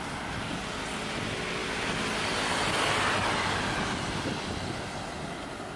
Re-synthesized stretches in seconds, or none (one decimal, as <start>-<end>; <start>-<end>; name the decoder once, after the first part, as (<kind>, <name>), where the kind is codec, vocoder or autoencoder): none